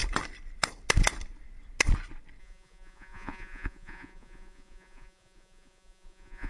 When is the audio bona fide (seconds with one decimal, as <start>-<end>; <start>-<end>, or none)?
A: 0.0-2.4